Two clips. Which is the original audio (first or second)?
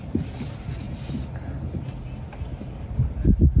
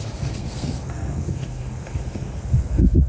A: first